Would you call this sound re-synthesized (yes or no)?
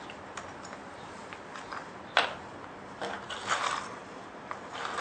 no